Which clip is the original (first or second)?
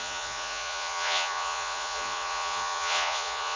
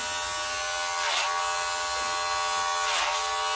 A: second